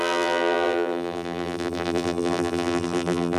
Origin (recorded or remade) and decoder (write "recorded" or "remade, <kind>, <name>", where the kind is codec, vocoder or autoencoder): remade, vocoder, BigVGAN v2